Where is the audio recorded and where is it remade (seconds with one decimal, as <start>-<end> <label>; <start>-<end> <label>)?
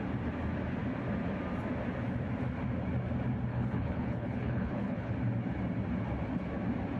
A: 0.0-3.5 recorded; 3.5-5.1 remade; 5.1-7.0 recorded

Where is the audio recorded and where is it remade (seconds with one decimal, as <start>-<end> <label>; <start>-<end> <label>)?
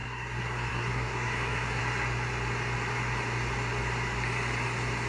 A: 0.0-1.8 remade; 1.8-5.1 recorded